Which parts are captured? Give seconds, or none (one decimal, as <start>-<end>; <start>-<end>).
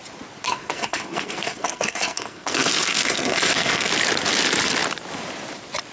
0.0-0.4; 3.9-5.9